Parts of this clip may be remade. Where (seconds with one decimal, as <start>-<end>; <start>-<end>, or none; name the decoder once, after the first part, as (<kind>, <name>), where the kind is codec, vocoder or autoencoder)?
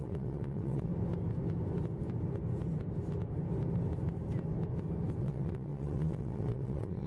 0.0-0.9 (vocoder, WaveNeXt); 5.2-7.1